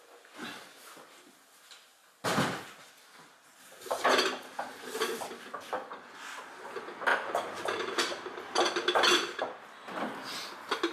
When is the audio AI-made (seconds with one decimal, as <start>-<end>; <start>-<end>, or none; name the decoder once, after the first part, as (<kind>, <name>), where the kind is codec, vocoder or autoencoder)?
7.1-8.1 (vocoder, BigVGAN v2)

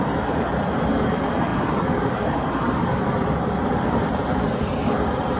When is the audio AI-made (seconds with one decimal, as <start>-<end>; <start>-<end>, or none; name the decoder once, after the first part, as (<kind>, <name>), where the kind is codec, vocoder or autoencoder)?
0.0-5.4 (vocoder, BigVGAN v2)

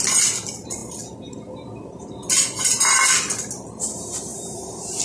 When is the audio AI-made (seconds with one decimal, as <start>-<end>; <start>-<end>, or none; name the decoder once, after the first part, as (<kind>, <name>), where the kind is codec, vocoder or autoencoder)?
4.3-5.0 (vocoder, BigVGAN v2)

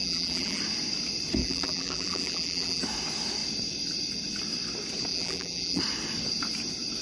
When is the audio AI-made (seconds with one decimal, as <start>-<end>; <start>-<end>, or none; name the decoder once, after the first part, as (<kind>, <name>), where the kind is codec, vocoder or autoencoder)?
0.0-0.6 (vocoder, BigVGAN v2); 1.4-2.8; 5.1-5.8

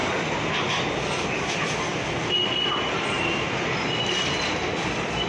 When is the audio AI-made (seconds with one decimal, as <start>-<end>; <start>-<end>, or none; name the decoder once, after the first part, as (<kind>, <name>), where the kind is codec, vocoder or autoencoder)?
0.0-0.6 (vocoder, BigVGAN v2)

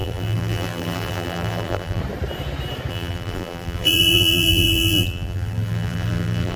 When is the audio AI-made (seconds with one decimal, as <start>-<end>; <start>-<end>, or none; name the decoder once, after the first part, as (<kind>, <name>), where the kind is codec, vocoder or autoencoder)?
0.0-2.0 (vocoder, BigVGAN v2); 2.9-6.6